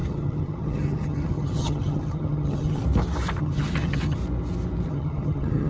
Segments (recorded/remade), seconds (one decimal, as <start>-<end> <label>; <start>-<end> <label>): 0.0-2.8 remade; 2.8-3.4 recorded; 3.4-4.2 remade; 4.2-4.9 recorded; 4.9-5.7 remade